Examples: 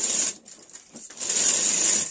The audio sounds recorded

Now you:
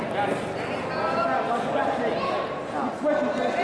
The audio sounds recorded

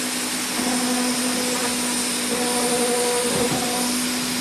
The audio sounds recorded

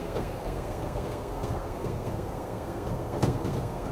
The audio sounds remade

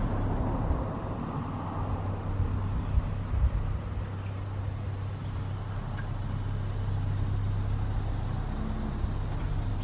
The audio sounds recorded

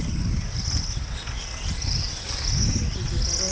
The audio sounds recorded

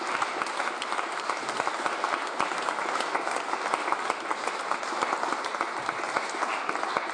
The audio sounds recorded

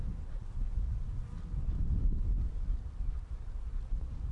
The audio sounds recorded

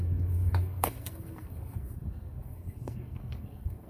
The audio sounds remade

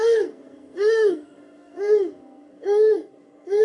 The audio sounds remade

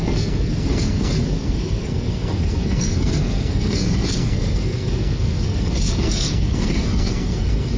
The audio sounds remade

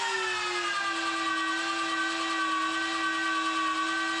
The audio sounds recorded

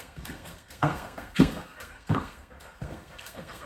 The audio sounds remade